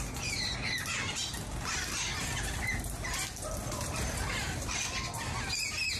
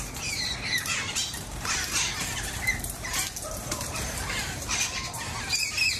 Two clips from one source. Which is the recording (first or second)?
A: first